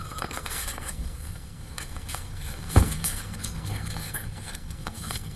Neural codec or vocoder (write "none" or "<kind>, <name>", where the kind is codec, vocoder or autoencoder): codec, SNAC